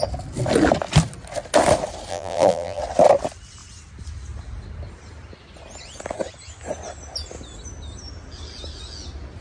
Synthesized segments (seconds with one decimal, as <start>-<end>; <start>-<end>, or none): 2.1-2.8